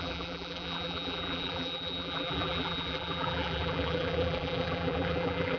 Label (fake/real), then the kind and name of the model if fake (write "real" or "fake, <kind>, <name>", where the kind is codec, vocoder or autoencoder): fake, vocoder, BigVGAN v2